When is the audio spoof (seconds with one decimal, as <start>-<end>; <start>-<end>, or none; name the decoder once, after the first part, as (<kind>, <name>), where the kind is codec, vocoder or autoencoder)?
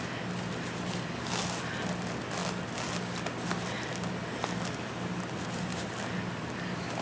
none